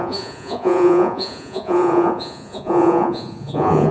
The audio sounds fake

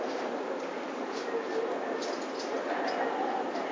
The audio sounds real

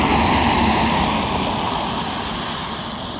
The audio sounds real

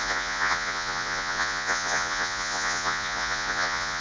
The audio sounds fake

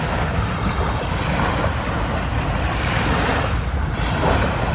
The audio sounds real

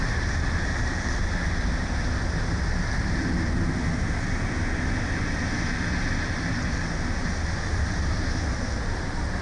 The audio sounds real